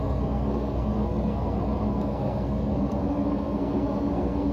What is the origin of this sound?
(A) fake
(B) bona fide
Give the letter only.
A